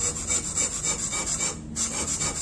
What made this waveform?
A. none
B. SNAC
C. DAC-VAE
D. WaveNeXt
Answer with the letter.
A